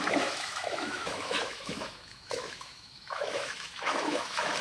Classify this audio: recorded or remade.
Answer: remade